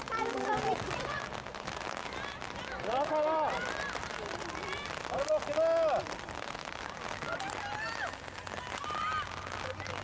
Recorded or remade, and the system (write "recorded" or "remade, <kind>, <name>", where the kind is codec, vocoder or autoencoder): recorded